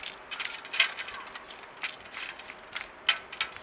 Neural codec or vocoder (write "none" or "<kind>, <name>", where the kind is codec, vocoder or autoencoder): none